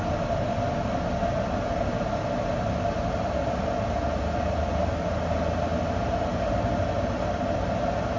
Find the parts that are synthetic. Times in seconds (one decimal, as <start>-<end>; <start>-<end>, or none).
none